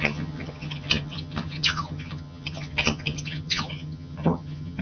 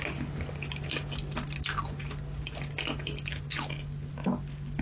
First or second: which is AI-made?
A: first